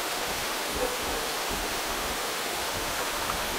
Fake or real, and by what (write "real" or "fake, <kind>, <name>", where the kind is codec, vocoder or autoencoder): fake, autoencoder, DAC-VAE